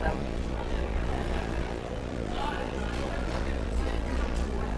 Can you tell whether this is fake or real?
fake